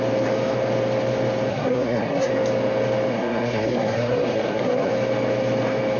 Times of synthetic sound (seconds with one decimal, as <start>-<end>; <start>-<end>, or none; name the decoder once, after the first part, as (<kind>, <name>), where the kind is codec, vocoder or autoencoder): 1.5-2.3 (codec, SNAC); 3.1-4.9